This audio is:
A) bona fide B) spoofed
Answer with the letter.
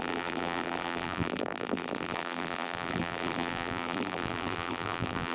B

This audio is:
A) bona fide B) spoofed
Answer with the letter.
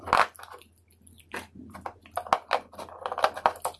A